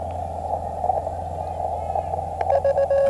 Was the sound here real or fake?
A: real